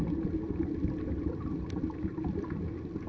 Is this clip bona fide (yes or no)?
yes